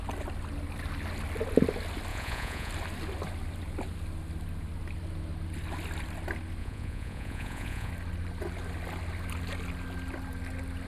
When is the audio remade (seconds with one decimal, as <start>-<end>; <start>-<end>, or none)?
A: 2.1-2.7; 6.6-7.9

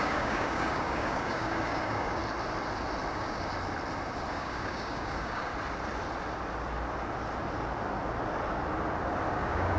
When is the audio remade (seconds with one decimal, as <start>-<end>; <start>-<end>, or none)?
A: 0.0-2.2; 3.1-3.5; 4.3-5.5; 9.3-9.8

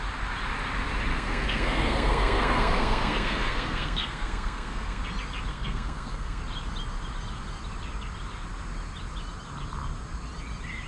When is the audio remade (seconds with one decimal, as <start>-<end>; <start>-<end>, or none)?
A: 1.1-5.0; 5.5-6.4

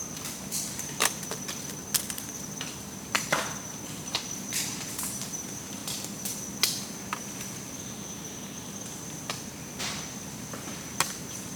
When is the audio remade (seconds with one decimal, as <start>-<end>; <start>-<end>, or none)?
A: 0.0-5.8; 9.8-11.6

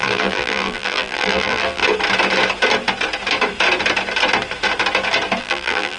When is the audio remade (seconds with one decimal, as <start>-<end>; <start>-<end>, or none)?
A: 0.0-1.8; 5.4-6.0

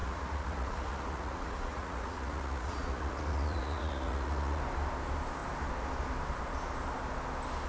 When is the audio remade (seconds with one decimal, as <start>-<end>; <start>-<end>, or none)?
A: 0.0-4.6

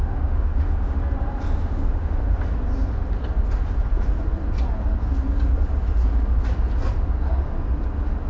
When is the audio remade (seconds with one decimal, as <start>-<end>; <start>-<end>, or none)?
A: 0.0-1.0; 1.6-2.4

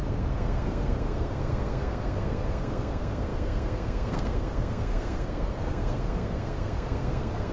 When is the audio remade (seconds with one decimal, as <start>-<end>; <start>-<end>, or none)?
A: 0.0-7.5